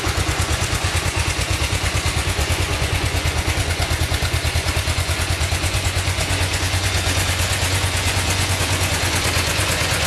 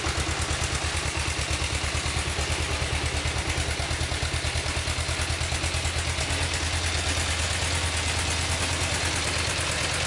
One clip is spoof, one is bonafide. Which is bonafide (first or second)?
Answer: second